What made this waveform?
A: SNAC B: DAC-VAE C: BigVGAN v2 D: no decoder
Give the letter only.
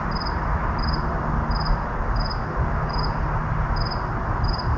D